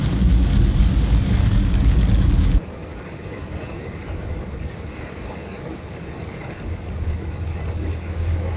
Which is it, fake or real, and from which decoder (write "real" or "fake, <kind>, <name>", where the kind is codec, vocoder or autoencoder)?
fake, codec, DAC